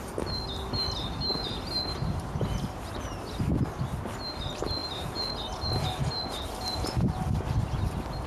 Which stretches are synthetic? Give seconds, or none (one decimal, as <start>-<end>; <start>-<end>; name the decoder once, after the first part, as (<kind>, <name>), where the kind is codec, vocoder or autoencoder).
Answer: none